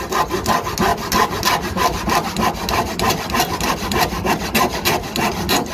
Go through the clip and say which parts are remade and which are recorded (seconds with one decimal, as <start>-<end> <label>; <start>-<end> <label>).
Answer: 0.0-5.7 recorded